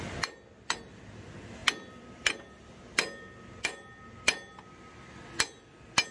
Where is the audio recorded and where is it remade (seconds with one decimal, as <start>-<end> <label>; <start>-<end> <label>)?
0.0-6.1 recorded